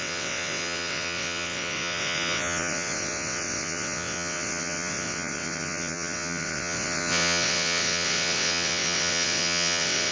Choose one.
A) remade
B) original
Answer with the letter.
A